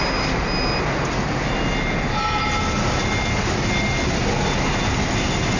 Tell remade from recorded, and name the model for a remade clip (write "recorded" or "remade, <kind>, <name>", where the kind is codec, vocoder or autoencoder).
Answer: recorded